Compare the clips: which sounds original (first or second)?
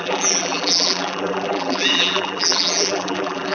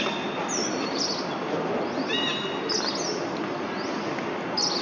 second